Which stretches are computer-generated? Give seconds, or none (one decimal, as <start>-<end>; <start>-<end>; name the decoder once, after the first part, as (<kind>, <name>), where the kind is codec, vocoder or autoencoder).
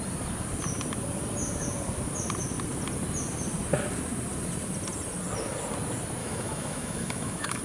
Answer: 6.2-7.6 (autoencoder, DAC-VAE)